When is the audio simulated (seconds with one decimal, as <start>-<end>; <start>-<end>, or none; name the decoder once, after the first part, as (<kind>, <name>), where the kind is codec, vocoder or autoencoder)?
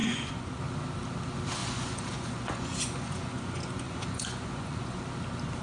0.0-0.6 (vocoder, Vocos); 1.6-5.0